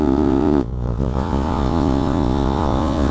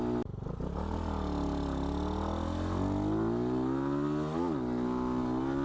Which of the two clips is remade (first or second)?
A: first